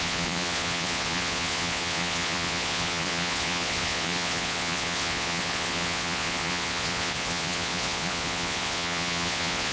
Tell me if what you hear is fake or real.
fake